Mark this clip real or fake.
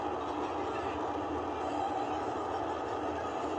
real